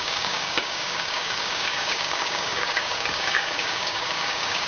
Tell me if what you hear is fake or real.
fake